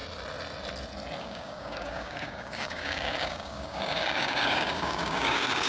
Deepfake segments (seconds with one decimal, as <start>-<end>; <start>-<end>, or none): 1.2-5.7